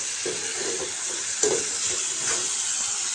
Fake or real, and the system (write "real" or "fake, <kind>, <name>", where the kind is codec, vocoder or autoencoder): real